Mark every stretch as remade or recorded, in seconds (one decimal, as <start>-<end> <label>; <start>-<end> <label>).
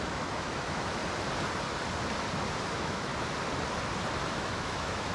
0.0-1.0 remade; 1.0-2.7 recorded; 2.7-3.1 remade; 3.1-4.3 recorded; 4.3-5.1 remade